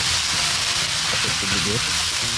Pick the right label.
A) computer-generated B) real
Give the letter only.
B